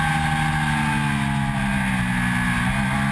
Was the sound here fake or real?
real